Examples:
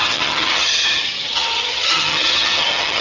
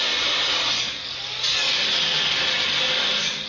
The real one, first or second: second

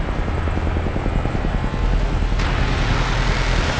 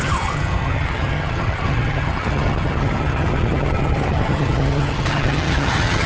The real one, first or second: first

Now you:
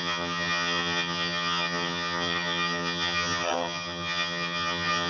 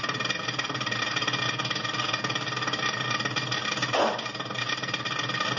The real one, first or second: second